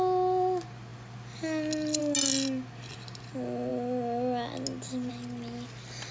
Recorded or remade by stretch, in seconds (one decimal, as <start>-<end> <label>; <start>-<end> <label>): 0.0-6.1 recorded